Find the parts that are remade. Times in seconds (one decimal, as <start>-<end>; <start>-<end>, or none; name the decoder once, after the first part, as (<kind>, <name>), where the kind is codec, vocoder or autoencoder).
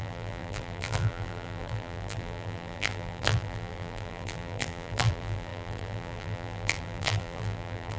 0.0-8.0 (vocoder, BigVGAN v2)